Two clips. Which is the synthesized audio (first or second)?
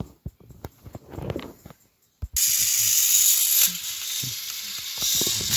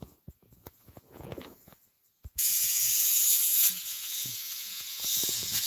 second